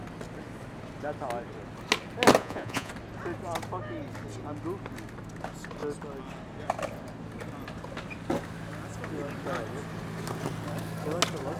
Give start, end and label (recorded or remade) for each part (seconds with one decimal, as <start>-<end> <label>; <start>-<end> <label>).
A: 0.0-2.4 recorded; 2.4-2.9 remade; 2.9-11.6 recorded